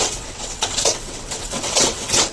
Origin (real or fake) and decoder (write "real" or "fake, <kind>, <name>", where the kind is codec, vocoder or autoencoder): fake, vocoder, WaveNeXt